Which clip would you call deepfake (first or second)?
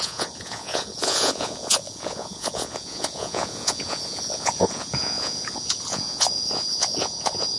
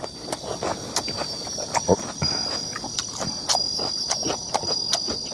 first